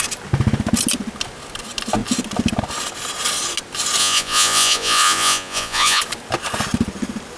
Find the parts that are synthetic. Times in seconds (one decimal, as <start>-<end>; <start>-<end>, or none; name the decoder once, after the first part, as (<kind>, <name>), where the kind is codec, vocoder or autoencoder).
4.0-6.0 (vocoder, Vocos)